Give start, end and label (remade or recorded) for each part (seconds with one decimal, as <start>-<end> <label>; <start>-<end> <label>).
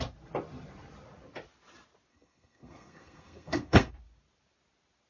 0.0-2.1 recorded; 2.1-3.9 remade; 3.9-5.1 recorded